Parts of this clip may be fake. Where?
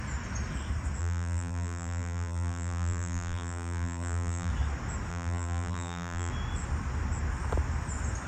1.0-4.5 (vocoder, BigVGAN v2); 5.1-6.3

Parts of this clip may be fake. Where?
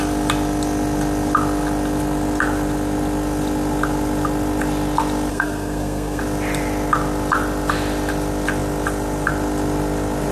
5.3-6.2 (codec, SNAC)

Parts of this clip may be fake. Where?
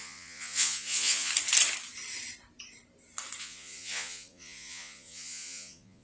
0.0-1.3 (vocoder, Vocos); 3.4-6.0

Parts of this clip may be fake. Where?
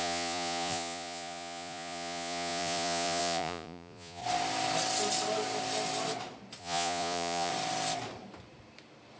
0.0-4.2 (vocoder, Vocos); 6.6-7.5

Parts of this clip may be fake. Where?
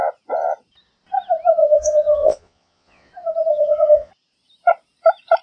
1.6-3.1 (vocoder, Vocos); 3.5-4.1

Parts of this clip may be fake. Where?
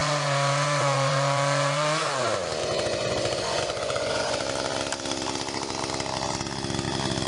0.0-2.2 (vocoder, Vocos); 2.6-4.4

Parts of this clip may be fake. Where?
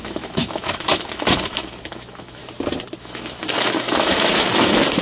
0.0-2.4 (autoencoder, DAC-VAE); 3.0-5.0